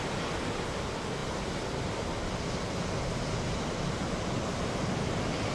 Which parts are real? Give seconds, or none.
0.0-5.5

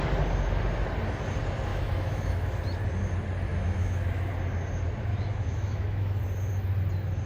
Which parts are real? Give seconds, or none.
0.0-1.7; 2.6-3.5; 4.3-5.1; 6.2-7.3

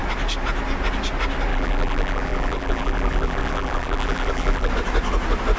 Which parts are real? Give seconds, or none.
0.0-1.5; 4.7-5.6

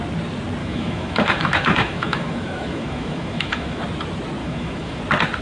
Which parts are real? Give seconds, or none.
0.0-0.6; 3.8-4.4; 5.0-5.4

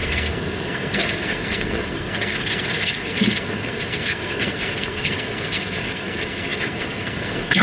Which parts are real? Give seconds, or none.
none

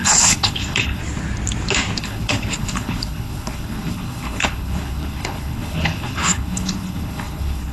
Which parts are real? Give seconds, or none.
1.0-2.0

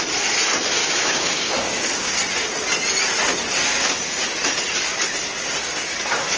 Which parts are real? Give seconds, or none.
0.0-0.8; 2.2-6.4

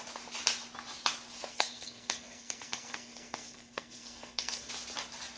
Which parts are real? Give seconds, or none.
0.0-1.5; 4.7-5.4